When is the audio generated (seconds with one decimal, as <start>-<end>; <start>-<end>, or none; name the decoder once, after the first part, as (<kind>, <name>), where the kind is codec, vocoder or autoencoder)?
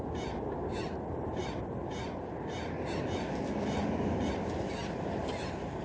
none